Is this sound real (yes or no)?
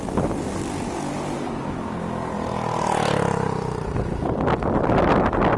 yes